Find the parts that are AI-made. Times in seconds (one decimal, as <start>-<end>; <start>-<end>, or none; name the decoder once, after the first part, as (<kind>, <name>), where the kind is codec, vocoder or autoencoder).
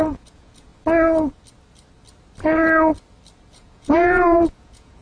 0.0-0.7 (vocoder, Vocos); 3.5-5.0